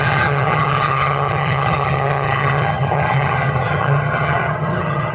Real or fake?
fake